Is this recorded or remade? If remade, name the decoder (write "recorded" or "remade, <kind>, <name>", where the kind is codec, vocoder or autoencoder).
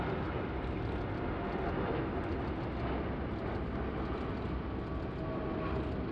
recorded